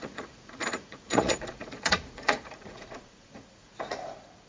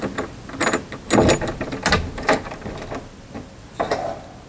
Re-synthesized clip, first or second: first